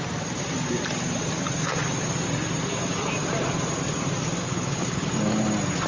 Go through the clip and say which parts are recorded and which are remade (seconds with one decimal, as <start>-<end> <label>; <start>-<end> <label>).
0.0-4.4 recorded; 4.4-5.1 remade; 5.1-5.9 recorded